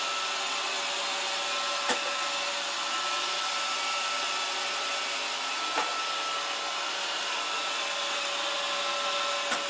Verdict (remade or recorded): recorded